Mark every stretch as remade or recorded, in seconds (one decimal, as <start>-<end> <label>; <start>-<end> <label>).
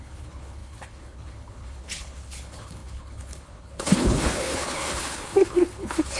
0.0-6.2 remade